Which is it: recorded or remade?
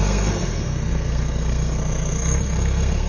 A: remade